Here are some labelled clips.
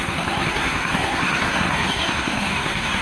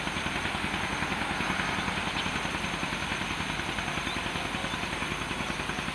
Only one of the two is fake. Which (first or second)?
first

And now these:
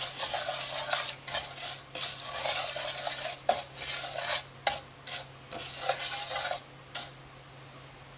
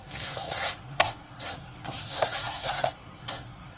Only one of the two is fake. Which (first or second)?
second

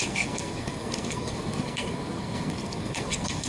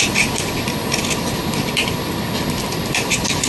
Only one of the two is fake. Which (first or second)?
first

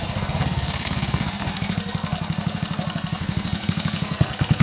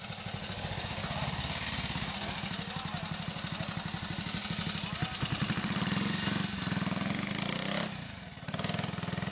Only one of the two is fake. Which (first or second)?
first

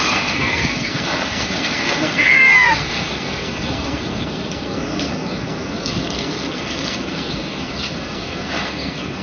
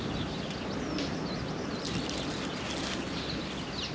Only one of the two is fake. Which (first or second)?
first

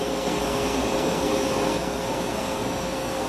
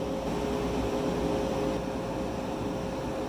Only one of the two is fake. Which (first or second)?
first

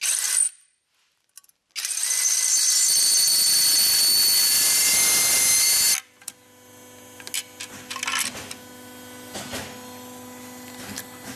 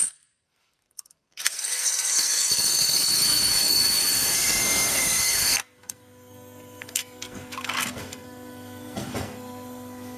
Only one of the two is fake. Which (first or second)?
second